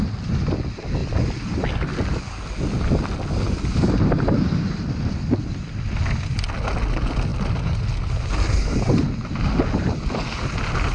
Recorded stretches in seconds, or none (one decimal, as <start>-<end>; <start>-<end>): 0.0-10.9